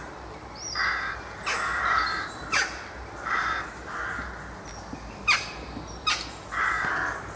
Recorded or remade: recorded